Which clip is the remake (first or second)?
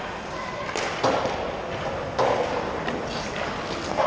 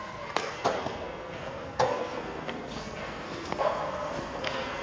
second